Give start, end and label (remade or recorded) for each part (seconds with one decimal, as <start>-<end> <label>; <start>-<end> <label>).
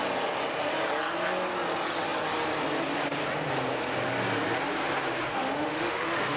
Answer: 0.0-5.3 recorded; 5.3-6.4 remade